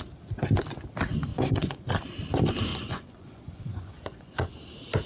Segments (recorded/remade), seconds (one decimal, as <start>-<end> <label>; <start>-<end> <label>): 0.0-1.3 recorded; 1.3-1.8 remade; 1.8-2.7 recorded; 2.7-4.5 remade; 4.5-5.1 recorded